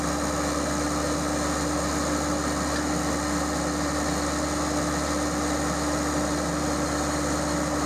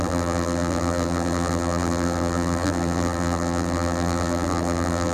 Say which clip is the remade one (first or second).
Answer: second